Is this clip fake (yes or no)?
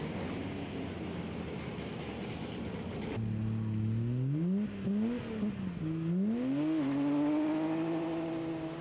no